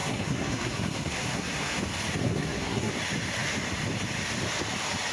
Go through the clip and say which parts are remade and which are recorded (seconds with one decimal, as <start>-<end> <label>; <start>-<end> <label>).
0.0-1.8 remade; 1.8-2.2 recorded; 2.2-2.9 remade; 2.9-5.1 recorded